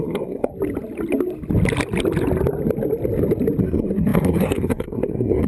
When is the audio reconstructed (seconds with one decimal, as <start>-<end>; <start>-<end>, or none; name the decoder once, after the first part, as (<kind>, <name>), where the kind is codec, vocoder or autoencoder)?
0.0-0.5 (codec, SNAC); 3.6-5.5